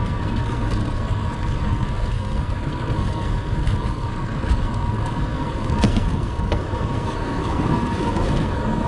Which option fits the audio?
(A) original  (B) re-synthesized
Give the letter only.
B